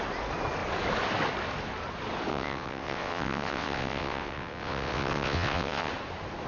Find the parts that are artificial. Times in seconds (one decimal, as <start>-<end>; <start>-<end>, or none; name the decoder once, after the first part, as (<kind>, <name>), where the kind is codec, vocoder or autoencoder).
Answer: 2.3-5.9 (vocoder, WaveNeXt)